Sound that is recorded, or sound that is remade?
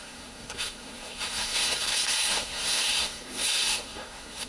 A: remade